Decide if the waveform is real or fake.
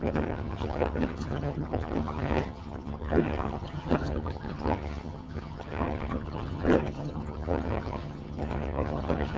fake